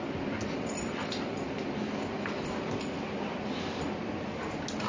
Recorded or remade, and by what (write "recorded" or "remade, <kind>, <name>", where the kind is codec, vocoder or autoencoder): recorded